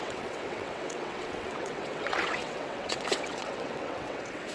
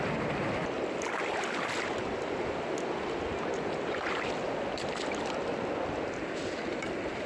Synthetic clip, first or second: first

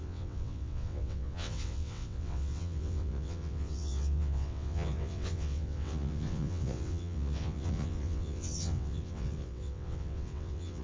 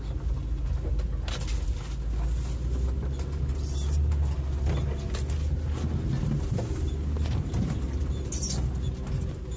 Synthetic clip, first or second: first